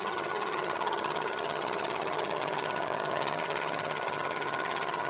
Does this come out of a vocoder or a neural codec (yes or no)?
yes